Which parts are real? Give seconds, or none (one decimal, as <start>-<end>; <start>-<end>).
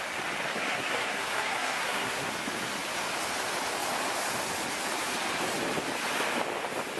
0.0-0.5; 2.3-7.0